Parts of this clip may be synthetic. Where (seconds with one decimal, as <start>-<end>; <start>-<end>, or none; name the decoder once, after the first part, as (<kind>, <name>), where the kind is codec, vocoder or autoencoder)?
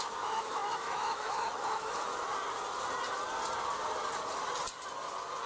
0.0-2.1 (autoencoder, DAC-VAE)